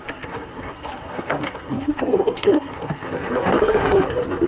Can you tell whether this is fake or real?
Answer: fake